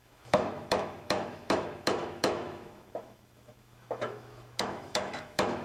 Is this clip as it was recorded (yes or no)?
no